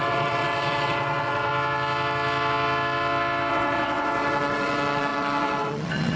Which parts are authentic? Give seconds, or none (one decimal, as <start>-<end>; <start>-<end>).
1.5-3.5